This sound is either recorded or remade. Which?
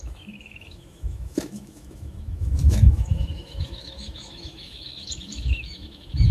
remade